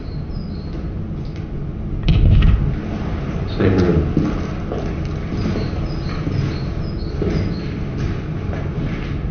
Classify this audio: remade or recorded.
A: recorded